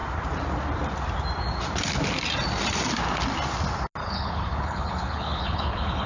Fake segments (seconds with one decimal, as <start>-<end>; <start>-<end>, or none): 4.0-6.1